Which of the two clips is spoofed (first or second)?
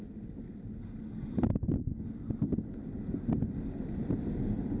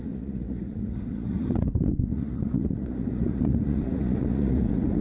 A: second